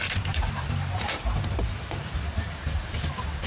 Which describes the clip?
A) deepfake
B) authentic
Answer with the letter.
A